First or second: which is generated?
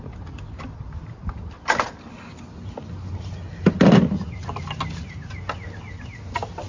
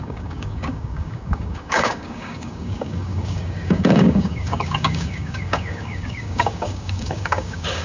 second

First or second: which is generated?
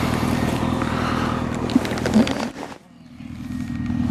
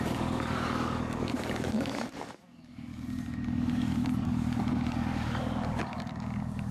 second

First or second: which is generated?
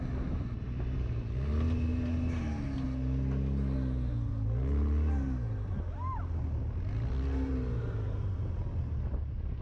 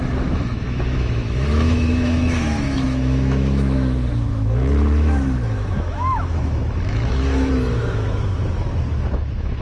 second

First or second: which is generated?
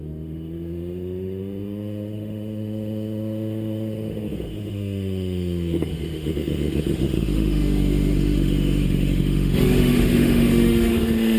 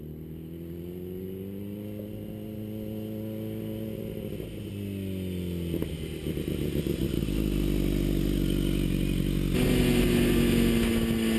first